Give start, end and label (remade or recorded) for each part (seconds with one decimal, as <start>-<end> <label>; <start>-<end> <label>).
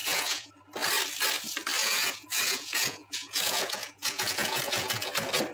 0.0-0.5 remade; 0.5-1.8 recorded; 1.8-5.1 remade; 5.1-5.5 recorded